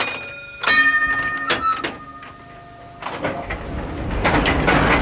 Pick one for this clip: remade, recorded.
recorded